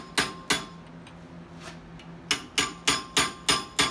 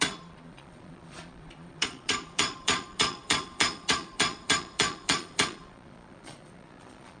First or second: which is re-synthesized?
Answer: second